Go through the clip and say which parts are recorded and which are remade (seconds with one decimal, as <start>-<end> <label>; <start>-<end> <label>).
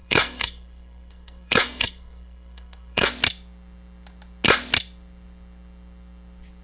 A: 0.0-3.1 remade; 3.1-6.6 recorded